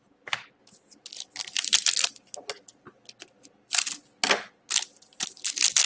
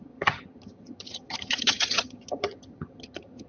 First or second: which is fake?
second